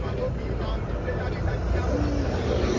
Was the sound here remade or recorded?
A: recorded